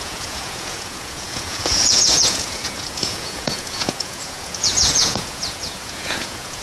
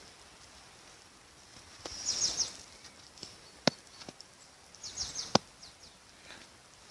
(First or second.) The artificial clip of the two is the first